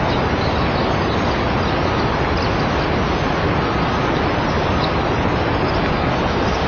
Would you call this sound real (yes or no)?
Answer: yes